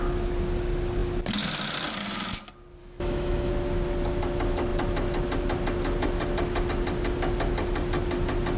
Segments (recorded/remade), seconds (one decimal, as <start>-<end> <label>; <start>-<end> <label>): 0.0-2.8 recorded; 2.8-3.5 remade; 3.5-8.6 recorded